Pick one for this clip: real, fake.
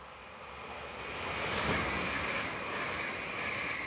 real